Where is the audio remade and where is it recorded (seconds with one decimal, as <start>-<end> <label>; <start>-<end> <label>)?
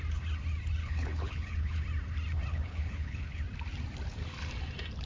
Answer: 0.0-0.8 recorded; 0.8-1.8 remade; 1.8-2.5 recorded; 2.5-3.4 remade; 3.4-5.1 recorded